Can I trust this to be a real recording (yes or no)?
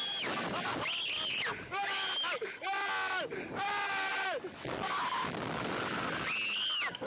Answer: yes